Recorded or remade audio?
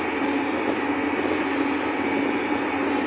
recorded